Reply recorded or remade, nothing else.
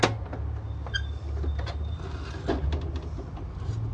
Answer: recorded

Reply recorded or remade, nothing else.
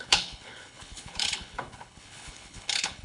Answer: remade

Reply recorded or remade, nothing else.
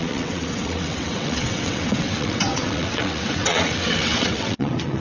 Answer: remade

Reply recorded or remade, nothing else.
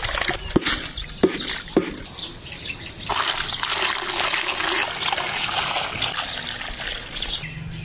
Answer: recorded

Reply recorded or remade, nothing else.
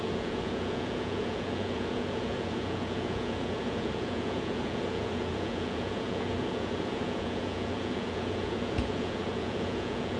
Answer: remade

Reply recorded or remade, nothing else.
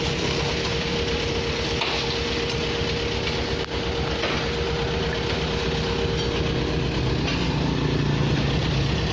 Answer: recorded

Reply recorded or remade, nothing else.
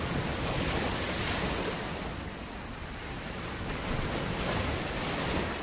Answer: recorded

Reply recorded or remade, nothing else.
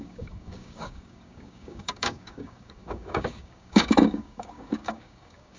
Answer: remade